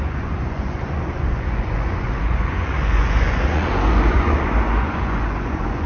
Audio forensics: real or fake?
fake